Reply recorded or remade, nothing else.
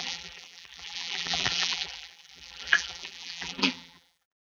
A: remade